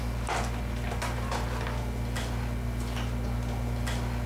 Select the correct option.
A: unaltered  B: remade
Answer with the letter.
A